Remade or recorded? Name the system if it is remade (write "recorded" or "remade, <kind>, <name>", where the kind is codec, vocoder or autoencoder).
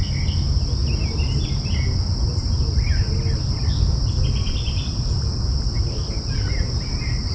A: recorded